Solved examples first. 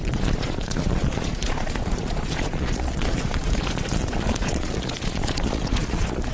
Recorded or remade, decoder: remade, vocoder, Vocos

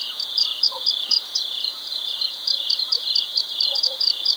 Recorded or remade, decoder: remade, vocoder, Vocos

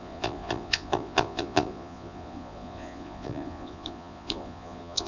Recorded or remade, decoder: remade, vocoder, Vocos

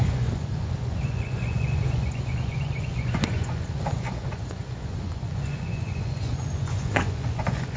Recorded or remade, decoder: remade, vocoder, Vocos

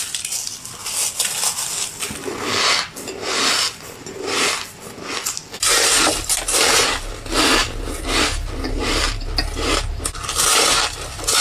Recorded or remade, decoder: recorded